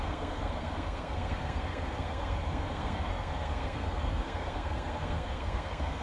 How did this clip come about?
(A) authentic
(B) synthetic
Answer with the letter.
B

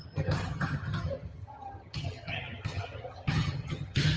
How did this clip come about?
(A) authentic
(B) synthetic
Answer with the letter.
B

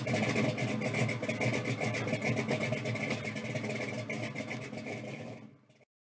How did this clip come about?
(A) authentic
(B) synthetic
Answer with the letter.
A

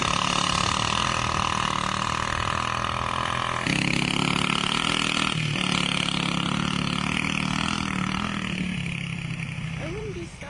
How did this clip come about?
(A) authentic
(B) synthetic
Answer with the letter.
A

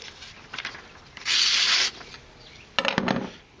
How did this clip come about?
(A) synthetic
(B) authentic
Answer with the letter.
B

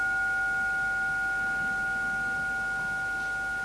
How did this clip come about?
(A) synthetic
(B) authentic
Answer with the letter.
B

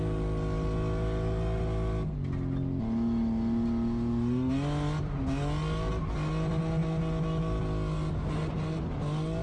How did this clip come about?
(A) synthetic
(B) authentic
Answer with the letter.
B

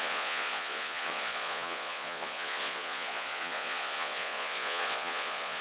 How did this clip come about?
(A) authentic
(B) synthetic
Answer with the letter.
B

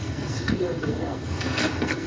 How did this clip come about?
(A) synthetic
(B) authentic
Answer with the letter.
A